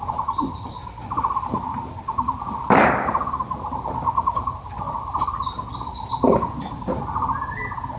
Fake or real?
real